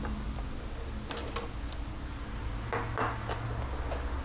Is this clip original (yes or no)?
yes